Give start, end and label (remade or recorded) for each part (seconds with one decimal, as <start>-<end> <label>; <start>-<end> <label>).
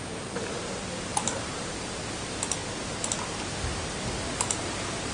0.0-1.1 recorded; 1.1-1.9 remade; 1.9-5.1 recorded